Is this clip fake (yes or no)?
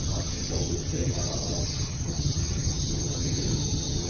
yes